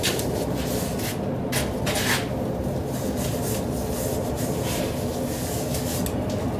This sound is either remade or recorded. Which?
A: recorded